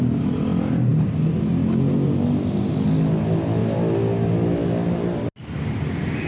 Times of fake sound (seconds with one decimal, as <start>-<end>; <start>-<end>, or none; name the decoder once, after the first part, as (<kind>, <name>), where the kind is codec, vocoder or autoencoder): none